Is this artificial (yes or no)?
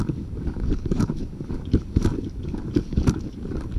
yes